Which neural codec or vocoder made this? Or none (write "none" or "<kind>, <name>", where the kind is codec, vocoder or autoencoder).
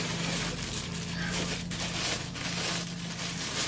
none